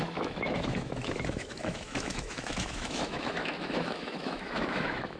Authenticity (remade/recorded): remade